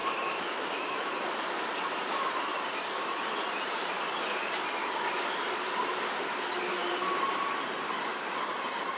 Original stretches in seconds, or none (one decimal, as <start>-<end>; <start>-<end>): 1.1-9.0